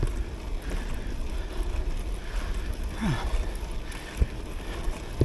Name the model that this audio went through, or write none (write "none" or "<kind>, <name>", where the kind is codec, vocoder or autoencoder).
none